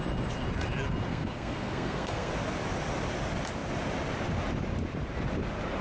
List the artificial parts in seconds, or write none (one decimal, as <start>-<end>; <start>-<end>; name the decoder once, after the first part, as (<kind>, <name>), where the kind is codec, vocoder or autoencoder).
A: 1.1-2.3 (codec, SNAC)